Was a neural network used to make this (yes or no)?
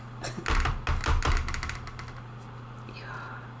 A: no